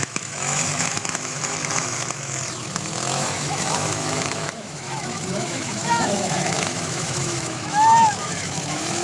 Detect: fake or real fake